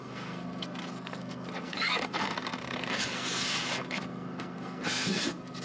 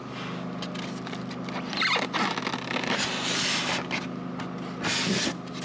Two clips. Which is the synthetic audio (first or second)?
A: first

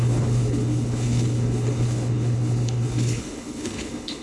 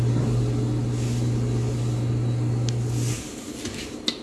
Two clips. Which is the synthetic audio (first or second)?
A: first